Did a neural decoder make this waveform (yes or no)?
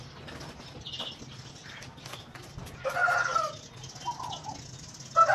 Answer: no